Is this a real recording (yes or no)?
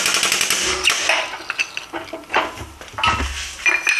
yes